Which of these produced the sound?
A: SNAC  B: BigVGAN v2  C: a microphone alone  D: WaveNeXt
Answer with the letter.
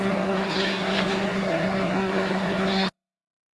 A